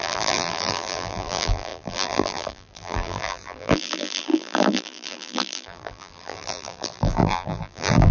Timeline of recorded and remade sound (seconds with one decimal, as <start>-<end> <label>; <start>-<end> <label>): 0.0-8.1 remade